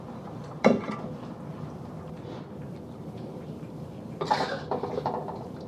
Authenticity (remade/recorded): remade